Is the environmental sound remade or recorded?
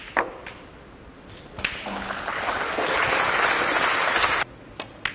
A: recorded